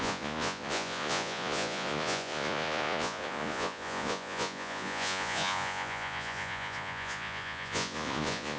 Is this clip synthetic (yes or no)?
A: yes